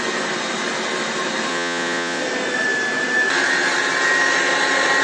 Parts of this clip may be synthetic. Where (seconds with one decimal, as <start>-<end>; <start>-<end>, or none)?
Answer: 1.5-2.2